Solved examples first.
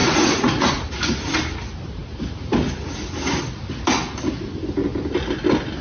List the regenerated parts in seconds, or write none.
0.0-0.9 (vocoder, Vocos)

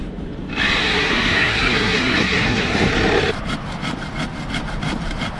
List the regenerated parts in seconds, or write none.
0.8-2.9 (codec, SNAC)

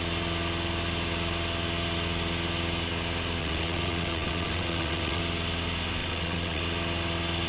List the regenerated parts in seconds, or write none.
3.4-5.2 (vocoder, WaveNeXt); 6.0-6.6

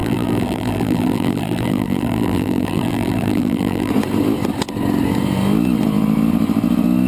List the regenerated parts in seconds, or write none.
0.0-3.9 (vocoder, BigVGAN v2)